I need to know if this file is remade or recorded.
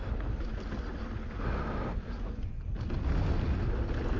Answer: recorded